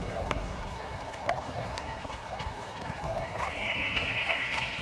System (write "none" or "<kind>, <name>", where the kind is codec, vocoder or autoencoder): codec, SNAC